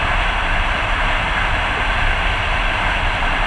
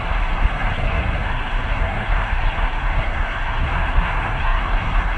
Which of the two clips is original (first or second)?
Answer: first